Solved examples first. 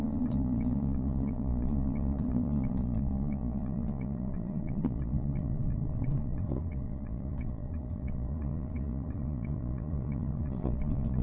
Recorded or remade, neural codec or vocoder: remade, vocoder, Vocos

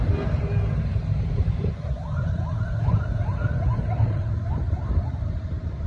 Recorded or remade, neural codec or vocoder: remade, vocoder, BigVGAN v2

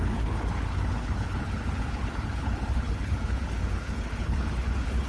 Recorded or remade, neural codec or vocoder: remade, codec, HILCodec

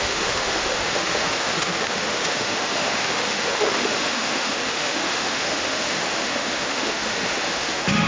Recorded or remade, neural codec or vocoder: remade, autoencoder, DAC-VAE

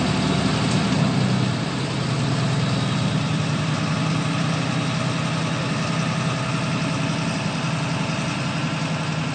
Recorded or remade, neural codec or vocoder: recorded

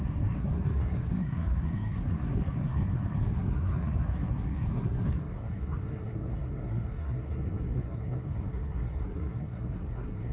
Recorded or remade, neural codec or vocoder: remade, codec, SNAC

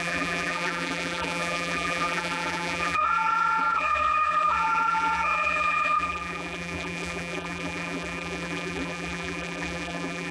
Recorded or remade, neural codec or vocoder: remade, vocoder, BigVGAN v2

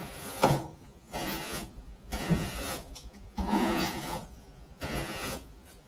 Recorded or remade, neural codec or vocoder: remade, vocoder, Vocos